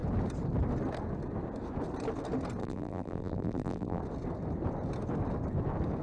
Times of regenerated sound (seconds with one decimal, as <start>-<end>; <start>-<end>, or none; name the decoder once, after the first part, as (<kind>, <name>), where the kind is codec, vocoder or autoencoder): 2.6-4.0 (vocoder, BigVGAN v2)